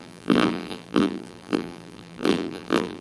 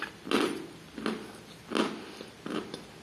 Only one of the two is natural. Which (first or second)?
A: second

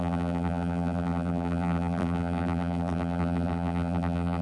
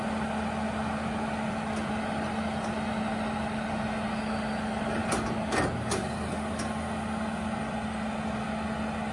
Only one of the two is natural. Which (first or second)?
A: second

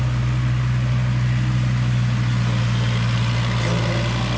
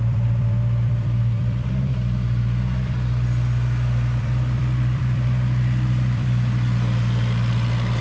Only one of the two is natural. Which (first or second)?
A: first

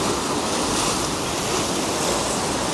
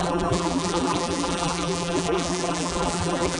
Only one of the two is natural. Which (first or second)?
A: first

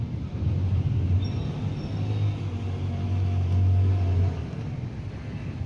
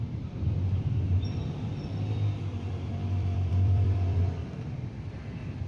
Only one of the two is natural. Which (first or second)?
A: first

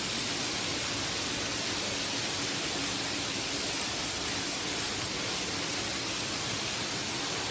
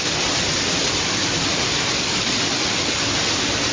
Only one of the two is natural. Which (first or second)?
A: first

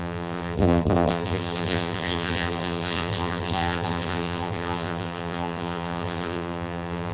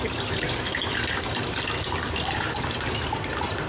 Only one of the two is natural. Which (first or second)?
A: second